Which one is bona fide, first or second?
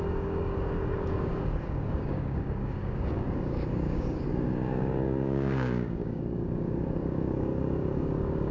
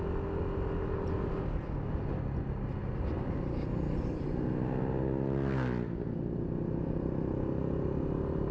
second